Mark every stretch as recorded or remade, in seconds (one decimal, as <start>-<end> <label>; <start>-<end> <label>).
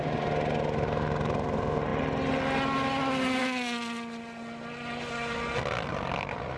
0.0-6.6 recorded